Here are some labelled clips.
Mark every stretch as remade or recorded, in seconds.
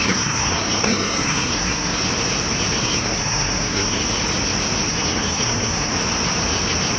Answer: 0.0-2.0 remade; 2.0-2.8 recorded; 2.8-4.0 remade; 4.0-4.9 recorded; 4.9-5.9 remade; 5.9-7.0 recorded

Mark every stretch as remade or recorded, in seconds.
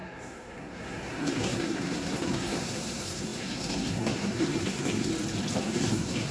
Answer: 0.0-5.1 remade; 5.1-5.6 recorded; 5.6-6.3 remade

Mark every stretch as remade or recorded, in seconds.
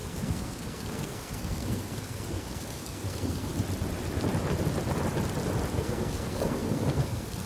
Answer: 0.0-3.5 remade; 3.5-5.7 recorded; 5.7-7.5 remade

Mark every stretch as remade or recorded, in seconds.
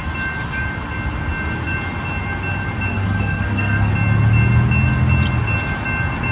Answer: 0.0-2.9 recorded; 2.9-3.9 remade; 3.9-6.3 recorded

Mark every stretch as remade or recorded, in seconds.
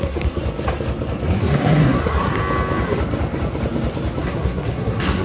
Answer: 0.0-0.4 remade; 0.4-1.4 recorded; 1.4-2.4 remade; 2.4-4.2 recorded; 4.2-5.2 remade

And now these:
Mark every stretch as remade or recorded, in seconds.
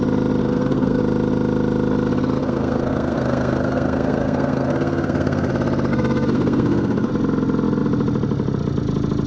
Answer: 0.0-0.4 recorded; 0.4-1.0 remade; 1.0-2.4 recorded; 2.4-5.5 remade; 5.5-5.9 recorded; 5.9-7.1 remade; 7.1-9.3 recorded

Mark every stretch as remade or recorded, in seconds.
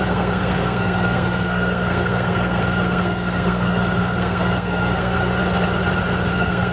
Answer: 0.0-5.4 remade; 5.4-6.3 recorded; 6.3-6.7 remade